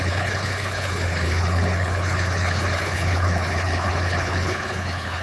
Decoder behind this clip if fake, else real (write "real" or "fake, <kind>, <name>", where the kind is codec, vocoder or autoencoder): fake, codec, HILCodec